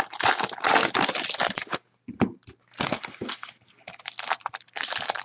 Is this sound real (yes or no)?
yes